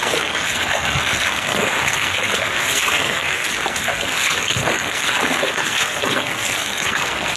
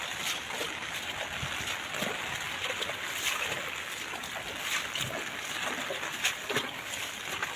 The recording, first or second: second